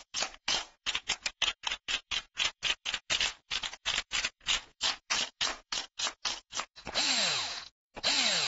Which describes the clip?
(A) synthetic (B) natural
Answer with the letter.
A